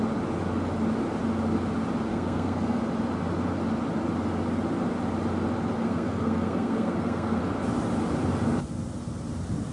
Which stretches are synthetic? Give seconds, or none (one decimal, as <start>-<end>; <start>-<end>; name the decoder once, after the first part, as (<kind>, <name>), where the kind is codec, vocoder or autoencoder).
2.1-2.8 (codec, SNAC); 5.8-7.4